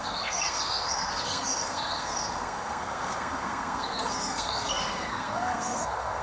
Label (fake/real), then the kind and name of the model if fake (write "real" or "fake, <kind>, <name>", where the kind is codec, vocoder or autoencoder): fake, codec, SNAC